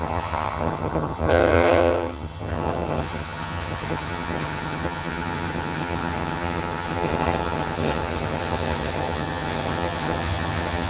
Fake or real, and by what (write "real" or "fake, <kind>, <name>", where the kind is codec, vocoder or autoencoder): fake, vocoder, HiFi-GAN